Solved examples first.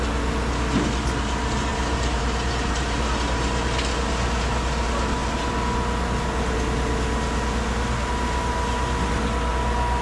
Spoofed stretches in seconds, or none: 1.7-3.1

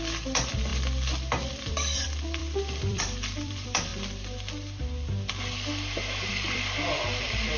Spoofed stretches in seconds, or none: 0.0-0.7; 1.5-3.9; 6.3-7.6

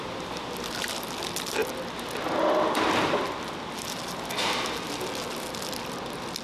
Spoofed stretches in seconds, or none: none

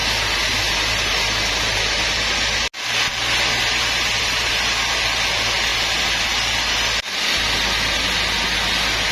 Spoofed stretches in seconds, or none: none